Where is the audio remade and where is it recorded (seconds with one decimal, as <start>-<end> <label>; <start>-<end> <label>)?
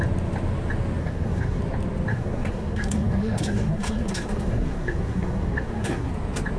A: 0.0-1.0 recorded; 1.0-1.6 remade; 1.6-2.1 recorded; 2.1-6.1 remade; 6.1-6.6 recorded